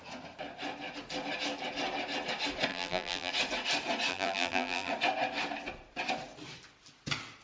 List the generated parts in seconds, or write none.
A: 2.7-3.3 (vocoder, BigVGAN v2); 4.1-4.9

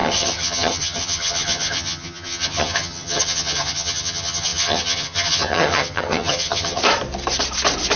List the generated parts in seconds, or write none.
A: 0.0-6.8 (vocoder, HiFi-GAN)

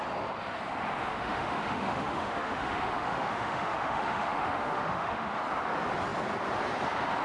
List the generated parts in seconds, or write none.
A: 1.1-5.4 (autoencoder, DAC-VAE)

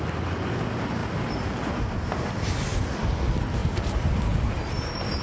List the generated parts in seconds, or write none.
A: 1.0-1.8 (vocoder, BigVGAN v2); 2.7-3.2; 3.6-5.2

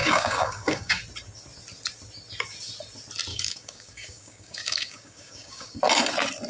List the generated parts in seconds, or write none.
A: 0.0-1.0 (codec, DAC); 3.3-5.8

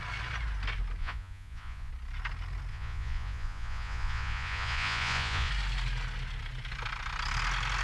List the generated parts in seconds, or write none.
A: 1.0-1.9 (vocoder, Vocos); 2.7-5.5

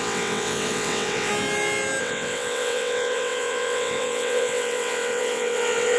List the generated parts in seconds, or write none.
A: 0.0-1.3 (vocoder, WaveNeXt); 2.0-6.0